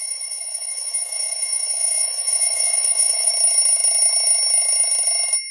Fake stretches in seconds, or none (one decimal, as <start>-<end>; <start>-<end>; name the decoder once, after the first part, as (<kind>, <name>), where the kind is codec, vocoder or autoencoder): 0.0-3.3 (vocoder, Vocos)